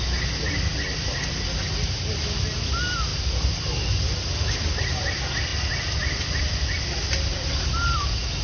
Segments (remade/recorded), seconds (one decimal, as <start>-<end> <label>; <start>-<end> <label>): 0.0-3.1 recorded; 3.1-3.7 remade; 3.7-8.4 recorded